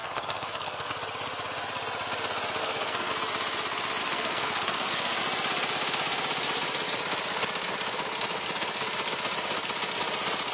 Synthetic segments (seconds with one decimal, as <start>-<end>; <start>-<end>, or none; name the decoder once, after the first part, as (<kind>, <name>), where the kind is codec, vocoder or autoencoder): 0.0-0.9 (codec, SNAC); 2.6-3.1; 4.0-5.2